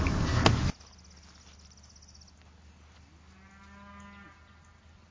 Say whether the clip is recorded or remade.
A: recorded